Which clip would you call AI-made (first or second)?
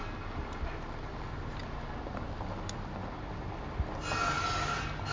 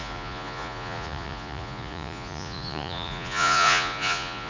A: second